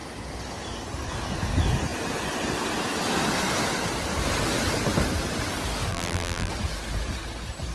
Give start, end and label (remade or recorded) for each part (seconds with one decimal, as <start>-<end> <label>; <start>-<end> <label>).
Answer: 0.0-5.9 recorded; 5.9-6.5 remade; 6.5-7.7 recorded